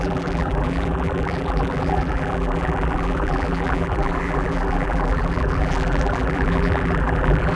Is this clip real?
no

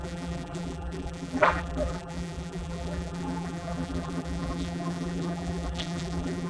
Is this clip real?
no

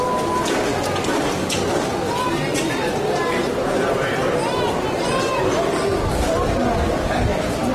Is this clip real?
yes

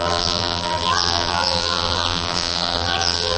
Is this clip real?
no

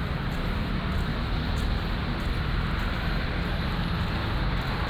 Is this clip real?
yes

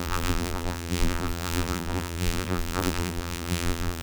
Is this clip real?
no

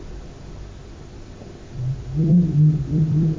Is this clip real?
no